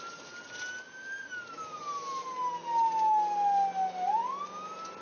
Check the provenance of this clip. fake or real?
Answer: real